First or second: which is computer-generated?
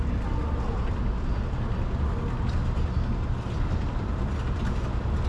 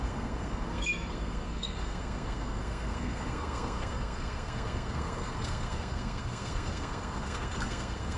second